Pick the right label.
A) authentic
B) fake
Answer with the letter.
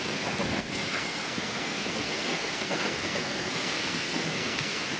B